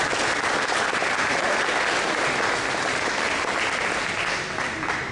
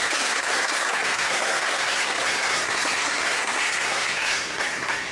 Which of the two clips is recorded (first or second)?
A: first